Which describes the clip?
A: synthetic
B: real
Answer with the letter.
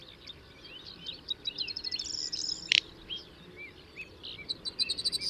B